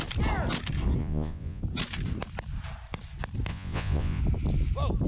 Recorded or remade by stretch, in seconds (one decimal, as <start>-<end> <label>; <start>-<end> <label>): 0.0-1.0 recorded; 1.0-1.6 remade; 1.6-3.5 recorded; 3.5-4.2 remade; 4.2-5.1 recorded